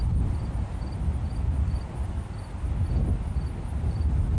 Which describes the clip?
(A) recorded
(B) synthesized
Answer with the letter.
A